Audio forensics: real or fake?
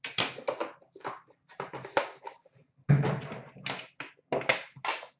real